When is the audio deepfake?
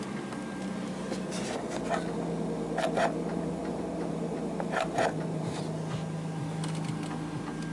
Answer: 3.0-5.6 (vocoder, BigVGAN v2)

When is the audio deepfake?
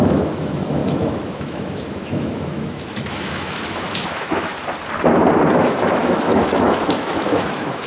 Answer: 0.0-4.5 (autoencoder, DAC-VAE); 5.5-7.9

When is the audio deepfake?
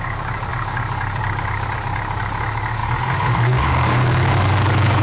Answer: 0.0-5.0 (codec, DAC)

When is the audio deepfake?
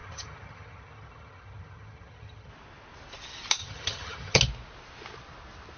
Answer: 0.0-2.5 (vocoder, HiFi-GAN); 3.6-4.4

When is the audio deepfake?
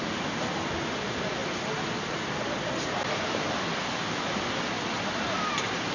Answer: none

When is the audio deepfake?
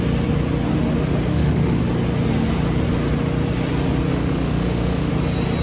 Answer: 1.3-1.8 (autoencoder, DAC-VAE); 4.1-5.1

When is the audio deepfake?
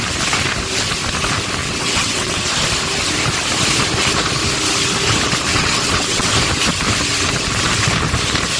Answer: 1.6-2.4 (vocoder, WaveNeXt); 5.5-6.3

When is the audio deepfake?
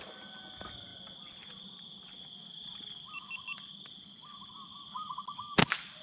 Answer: none